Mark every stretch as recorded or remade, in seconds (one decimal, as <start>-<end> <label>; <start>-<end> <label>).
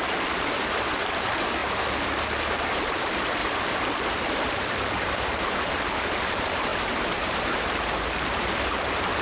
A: 0.0-1.6 remade; 1.6-2.6 recorded; 2.6-3.4 remade; 3.4-4.1 recorded; 4.1-6.7 remade; 6.7-8.0 recorded; 8.0-9.2 remade